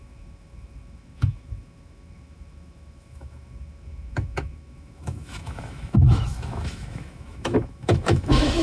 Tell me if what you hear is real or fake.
fake